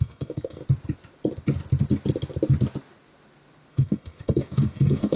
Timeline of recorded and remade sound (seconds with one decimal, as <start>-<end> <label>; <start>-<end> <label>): 0.0-0.6 remade; 0.6-3.7 recorded; 3.7-5.2 remade